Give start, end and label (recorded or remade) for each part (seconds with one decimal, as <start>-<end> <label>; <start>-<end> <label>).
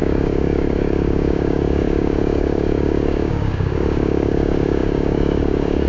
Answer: 0.0-5.9 remade